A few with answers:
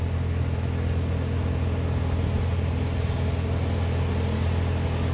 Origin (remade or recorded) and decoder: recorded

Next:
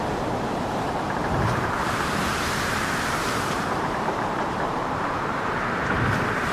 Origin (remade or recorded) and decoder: remade, vocoder, BigVGAN v2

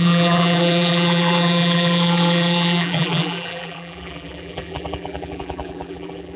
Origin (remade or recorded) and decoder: remade, vocoder, BigVGAN v2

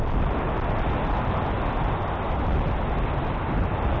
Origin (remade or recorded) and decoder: recorded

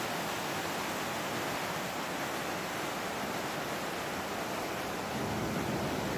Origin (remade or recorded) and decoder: recorded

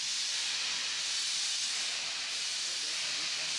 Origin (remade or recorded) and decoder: recorded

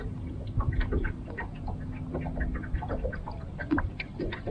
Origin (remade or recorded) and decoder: recorded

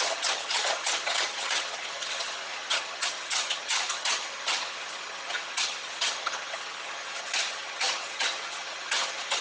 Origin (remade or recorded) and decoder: remade, vocoder, HiFi-GAN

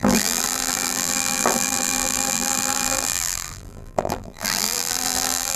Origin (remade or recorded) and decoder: remade, vocoder, BigVGAN v2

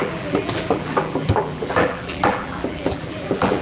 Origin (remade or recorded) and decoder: remade, vocoder, BigVGAN v2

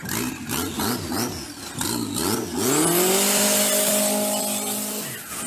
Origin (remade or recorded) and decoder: recorded